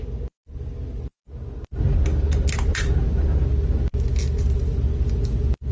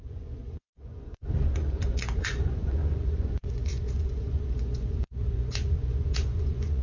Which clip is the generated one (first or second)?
second